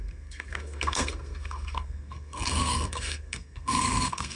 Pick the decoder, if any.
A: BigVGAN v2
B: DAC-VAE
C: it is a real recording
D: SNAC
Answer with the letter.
D